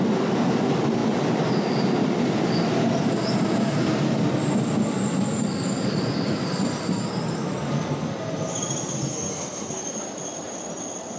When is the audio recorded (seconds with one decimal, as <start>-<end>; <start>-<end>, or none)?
0.0-9.1; 9.8-11.2